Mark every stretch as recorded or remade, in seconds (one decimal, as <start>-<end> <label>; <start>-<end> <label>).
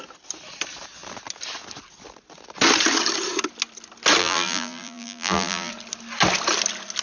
0.0-4.2 recorded; 4.2-5.7 remade; 5.7-7.0 recorded